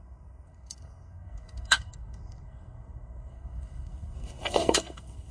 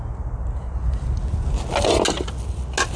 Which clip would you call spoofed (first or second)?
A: first